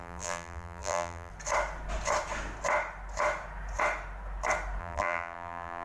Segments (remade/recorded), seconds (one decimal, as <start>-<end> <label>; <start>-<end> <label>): 0.0-1.3 remade; 1.3-4.8 recorded; 4.8-5.8 remade